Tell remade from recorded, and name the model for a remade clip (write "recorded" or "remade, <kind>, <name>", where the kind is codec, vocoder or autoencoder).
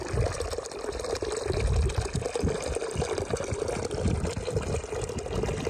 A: recorded